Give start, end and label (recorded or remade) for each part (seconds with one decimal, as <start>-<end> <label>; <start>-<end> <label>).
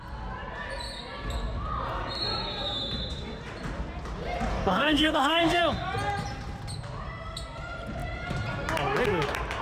0.0-4.5 recorded; 4.5-5.6 remade; 5.6-9.6 recorded